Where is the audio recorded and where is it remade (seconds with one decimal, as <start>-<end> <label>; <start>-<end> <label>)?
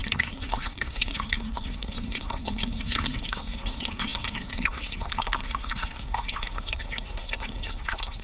0.0-8.2 remade